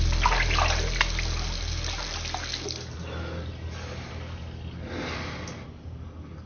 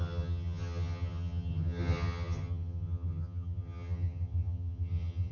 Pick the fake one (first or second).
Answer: second